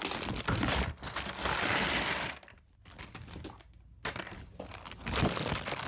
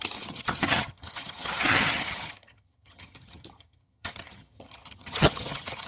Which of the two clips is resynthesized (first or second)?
second